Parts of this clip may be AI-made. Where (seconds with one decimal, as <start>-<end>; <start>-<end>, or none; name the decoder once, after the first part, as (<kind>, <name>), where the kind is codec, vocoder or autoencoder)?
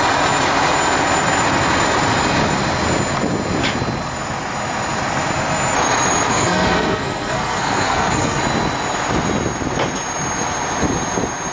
6.3-8.4 (codec, SNAC)